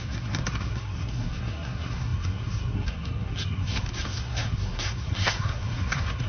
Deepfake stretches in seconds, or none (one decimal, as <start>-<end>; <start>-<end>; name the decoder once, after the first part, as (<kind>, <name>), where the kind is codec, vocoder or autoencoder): 0.0-6.3 (codec, SNAC)